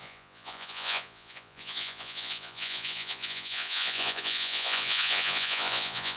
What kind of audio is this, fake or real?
fake